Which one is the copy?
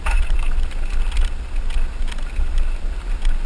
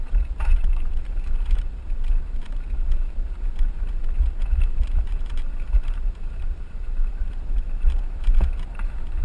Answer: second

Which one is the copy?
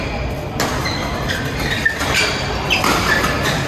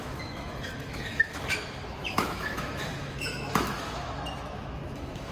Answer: second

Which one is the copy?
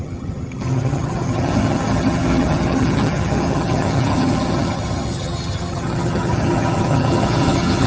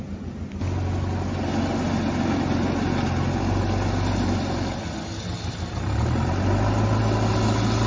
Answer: first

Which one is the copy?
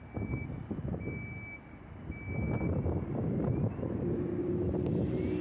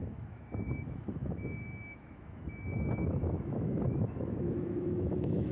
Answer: second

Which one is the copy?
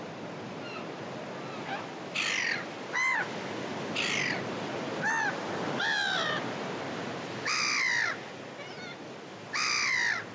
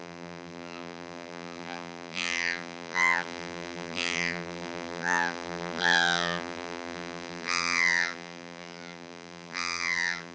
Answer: second